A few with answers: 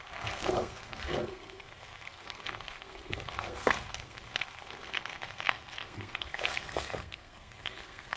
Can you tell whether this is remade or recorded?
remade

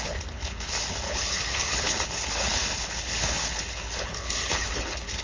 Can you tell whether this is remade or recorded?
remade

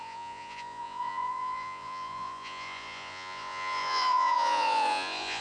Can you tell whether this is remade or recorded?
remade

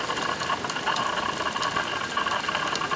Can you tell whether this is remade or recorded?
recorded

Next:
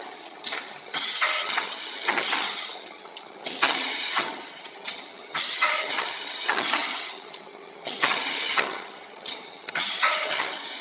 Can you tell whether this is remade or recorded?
remade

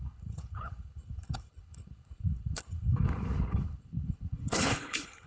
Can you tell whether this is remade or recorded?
remade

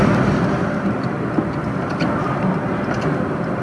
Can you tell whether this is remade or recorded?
recorded